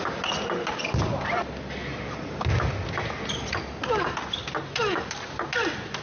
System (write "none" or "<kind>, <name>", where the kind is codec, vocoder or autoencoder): none